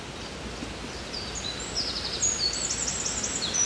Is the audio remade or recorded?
recorded